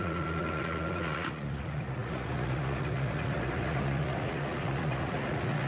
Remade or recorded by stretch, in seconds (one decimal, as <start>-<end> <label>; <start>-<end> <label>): 0.0-5.7 remade